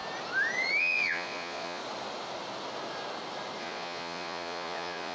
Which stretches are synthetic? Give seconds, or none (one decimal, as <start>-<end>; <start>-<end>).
0.8-1.8; 3.6-5.1